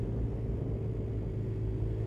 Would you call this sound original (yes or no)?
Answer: yes